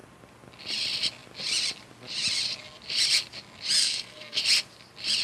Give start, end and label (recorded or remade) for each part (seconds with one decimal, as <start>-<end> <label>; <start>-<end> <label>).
0.0-3.8 recorded; 3.8-4.4 remade; 4.4-5.2 recorded